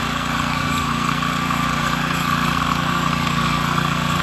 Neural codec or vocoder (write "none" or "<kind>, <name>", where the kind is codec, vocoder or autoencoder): codec, SNAC